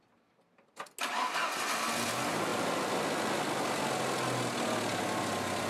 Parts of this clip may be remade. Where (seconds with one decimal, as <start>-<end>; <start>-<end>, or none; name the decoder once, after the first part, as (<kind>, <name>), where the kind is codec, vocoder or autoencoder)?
none